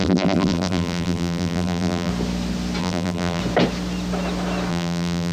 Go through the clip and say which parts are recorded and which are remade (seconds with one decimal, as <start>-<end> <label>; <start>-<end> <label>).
0.0-2.1 remade; 2.1-2.8 recorded; 2.8-3.4 remade; 3.4-4.7 recorded; 4.7-5.3 remade